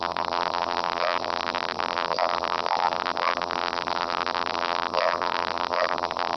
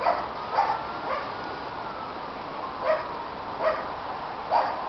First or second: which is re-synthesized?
first